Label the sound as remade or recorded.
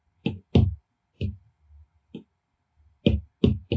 recorded